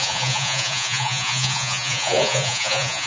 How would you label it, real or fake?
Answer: fake